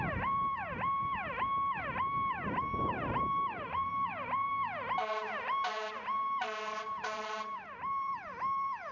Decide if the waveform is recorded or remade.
remade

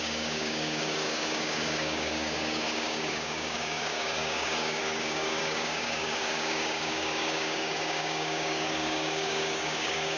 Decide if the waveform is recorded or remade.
remade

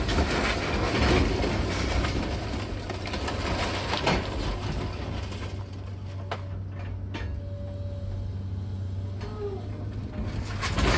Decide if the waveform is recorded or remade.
recorded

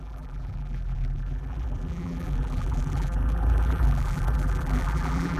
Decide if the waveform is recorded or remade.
remade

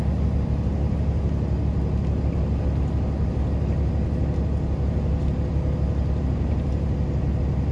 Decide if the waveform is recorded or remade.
recorded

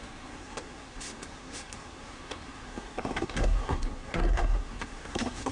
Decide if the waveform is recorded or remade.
remade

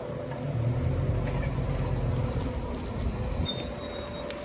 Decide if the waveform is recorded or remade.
recorded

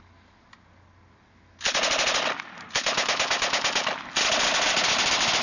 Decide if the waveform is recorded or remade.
recorded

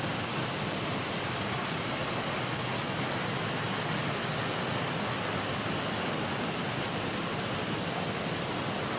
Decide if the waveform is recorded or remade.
recorded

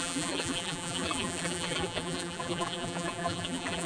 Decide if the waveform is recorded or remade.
remade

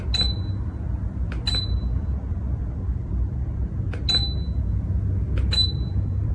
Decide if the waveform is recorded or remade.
recorded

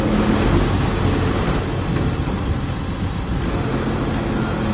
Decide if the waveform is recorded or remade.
recorded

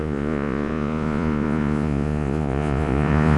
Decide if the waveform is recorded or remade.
remade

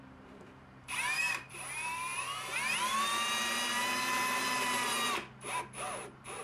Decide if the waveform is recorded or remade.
remade